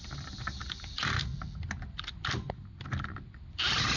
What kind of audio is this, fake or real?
real